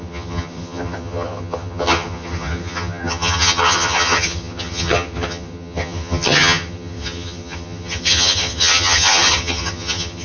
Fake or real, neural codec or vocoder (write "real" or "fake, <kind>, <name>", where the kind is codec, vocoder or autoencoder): fake, vocoder, HiFi-GAN